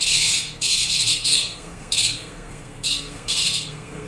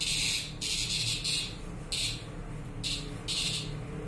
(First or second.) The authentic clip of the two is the second